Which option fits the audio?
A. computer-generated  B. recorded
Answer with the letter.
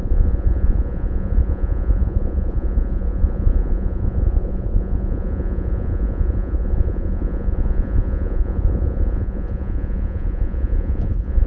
A